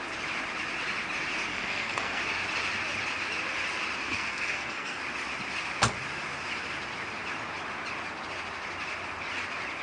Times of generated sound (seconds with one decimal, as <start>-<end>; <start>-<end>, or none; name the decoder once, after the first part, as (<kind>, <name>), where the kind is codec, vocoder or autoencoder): 1.5-2.2 (codec, SNAC); 4.1-5.0